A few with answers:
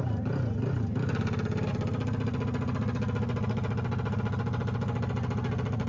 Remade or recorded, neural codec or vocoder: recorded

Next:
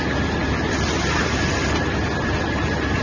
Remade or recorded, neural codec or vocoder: recorded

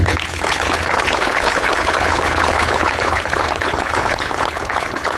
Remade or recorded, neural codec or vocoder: remade, codec, HILCodec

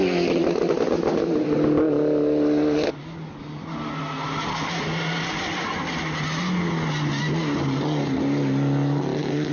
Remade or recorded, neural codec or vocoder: recorded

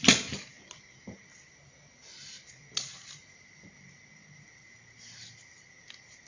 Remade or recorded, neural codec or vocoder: recorded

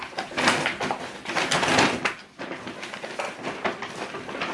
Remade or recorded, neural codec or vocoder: recorded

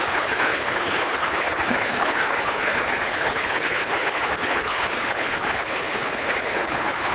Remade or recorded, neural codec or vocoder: remade, codec, HILCodec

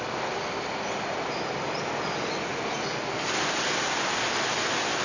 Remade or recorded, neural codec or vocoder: recorded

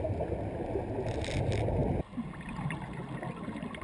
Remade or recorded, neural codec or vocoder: recorded